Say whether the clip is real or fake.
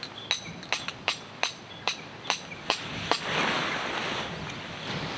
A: real